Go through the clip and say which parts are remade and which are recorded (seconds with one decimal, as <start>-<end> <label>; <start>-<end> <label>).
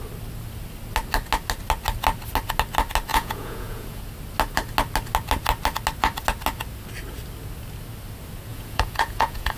0.0-3.1 recorded; 3.1-4.0 remade; 4.0-8.5 recorded; 8.5-9.6 remade